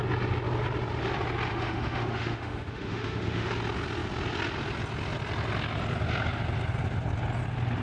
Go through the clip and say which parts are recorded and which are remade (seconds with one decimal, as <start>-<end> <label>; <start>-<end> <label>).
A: 0.0-1.5 recorded; 1.5-3.5 remade; 3.5-7.8 recorded